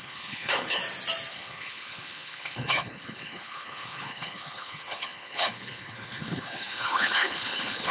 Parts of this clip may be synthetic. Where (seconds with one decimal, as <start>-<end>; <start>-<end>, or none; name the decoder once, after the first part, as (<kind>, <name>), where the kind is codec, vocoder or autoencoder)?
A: 0.0-0.8 (codec, HILCodec); 1.3-7.9